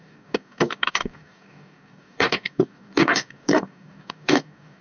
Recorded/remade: remade